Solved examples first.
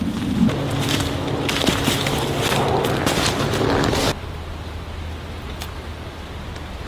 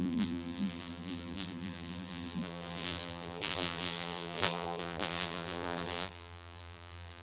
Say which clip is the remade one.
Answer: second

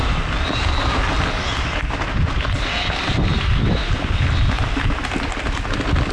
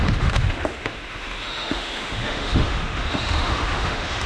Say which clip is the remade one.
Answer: second